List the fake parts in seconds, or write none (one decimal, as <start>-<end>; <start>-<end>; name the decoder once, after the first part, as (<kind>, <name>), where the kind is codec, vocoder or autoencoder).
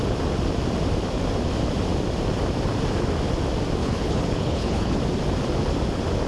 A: 3.8-5.0 (codec, HILCodec)